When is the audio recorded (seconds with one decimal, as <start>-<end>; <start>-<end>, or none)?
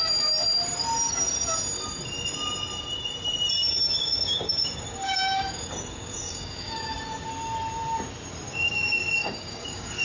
0.0-3.6; 7.3-8.5